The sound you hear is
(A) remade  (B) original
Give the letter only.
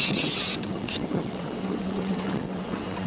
A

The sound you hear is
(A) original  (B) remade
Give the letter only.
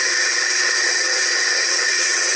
B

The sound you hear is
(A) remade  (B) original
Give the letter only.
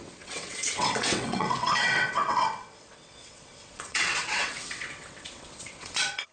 A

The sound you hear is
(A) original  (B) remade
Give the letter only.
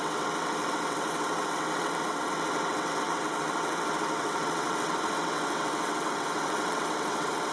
B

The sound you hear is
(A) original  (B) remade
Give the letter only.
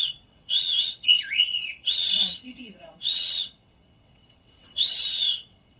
B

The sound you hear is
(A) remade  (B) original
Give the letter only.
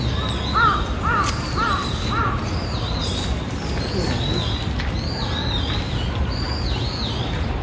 B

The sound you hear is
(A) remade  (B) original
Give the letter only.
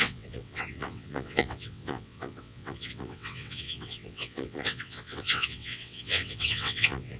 A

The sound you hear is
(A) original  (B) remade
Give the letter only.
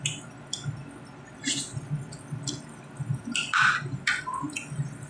A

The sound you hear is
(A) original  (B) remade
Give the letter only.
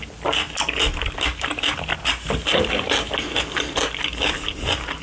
A